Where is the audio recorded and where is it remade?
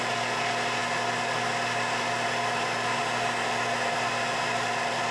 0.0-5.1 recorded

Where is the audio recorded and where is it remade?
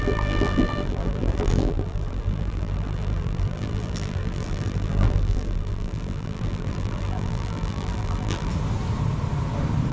0.0-8.5 remade; 8.5-9.9 recorded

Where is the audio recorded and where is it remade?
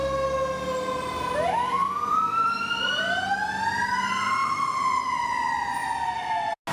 0.0-1.8 recorded; 1.8-2.8 remade; 2.8-5.8 recorded; 5.8-6.3 remade; 6.3-6.7 recorded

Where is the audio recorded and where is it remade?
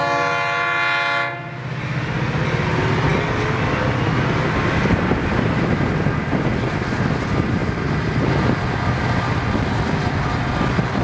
0.0-7.6 recorded; 7.6-8.7 remade; 8.7-11.0 recorded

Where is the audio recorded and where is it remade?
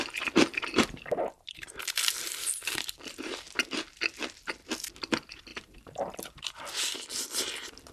0.0-0.5 recorded; 0.5-3.7 remade; 3.7-5.5 recorded; 5.5-6.7 remade; 6.7-7.9 recorded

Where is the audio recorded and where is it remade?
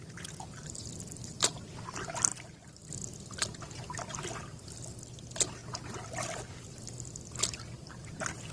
0.0-8.5 recorded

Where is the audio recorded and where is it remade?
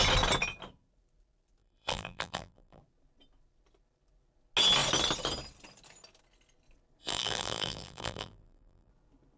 0.0-1.6 recorded; 1.6-2.8 remade; 2.8-7.0 recorded; 7.0-8.9 remade; 8.9-9.4 recorded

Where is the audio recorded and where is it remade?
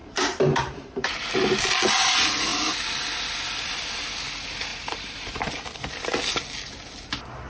0.0-1.3 remade; 1.3-4.7 recorded; 4.7-5.9 remade; 5.9-7.5 recorded